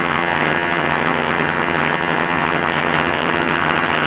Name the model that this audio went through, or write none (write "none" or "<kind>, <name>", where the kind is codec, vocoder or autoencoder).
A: vocoder, HiFi-GAN